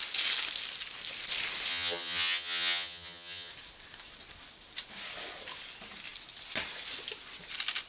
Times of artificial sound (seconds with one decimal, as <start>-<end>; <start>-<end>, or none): 1.7-3.5